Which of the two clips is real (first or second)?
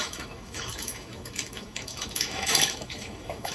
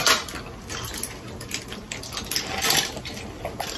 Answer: second